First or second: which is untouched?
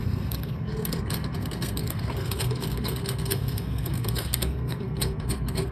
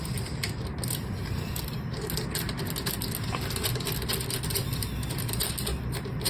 second